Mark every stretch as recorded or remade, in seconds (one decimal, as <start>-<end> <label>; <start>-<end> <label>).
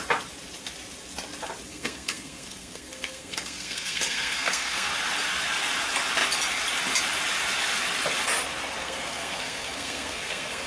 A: 0.0-1.7 recorded; 1.7-4.9 remade; 4.9-8.8 recorded; 8.8-10.7 remade